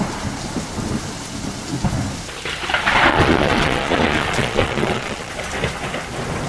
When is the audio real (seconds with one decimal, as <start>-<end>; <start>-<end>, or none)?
0.0-3.1; 5.3-6.5